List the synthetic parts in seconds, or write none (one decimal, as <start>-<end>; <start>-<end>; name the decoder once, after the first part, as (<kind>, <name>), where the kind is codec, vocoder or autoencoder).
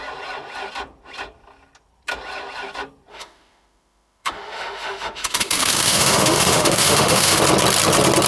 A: 3.1-7.4 (autoencoder, DAC-VAE)